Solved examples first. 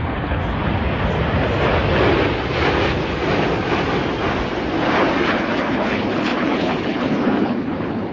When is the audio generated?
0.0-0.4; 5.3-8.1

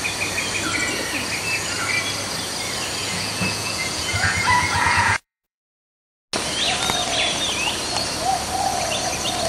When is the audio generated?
3.0-5.6

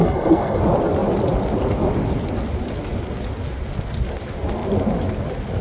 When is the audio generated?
0.0-0.6

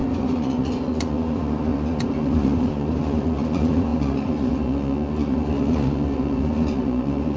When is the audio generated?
0.0-7.4

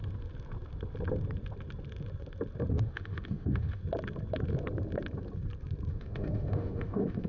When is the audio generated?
2.7-3.8; 5.9-7.3

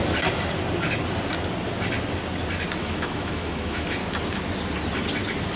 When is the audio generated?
2.8-4.0

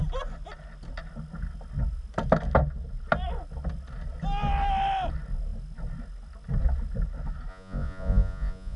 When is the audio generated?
7.5-8.8

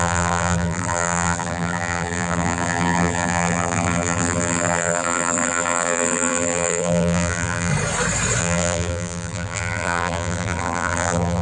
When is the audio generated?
0.0-7.7; 8.4-11.4